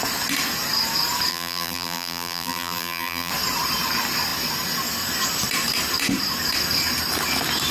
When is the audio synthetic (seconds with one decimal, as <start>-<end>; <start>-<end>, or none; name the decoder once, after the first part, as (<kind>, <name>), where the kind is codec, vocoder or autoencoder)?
1.3-3.3 (vocoder, BigVGAN v2)